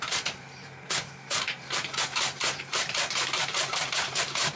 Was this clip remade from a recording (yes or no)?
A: yes